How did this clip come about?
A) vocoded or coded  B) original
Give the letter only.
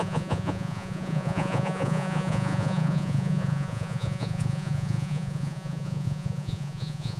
A